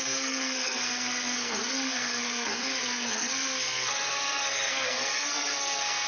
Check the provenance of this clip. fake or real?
fake